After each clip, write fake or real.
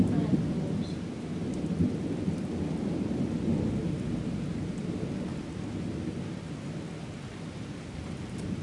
real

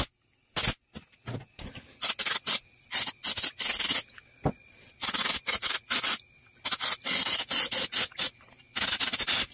real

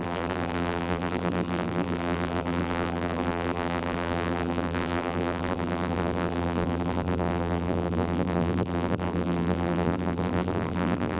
fake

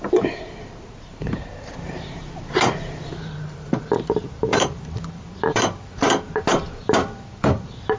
fake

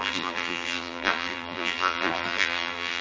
fake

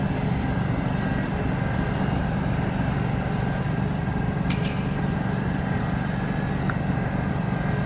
real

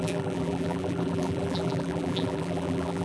fake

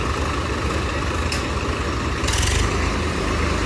real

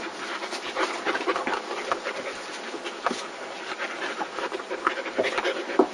real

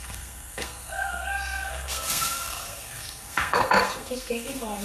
fake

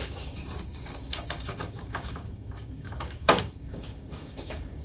fake